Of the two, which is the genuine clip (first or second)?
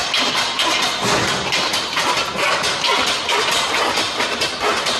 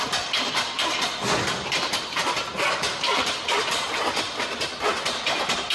first